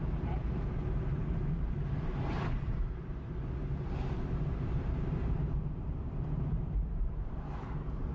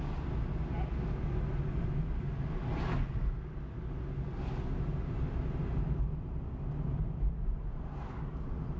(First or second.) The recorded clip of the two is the second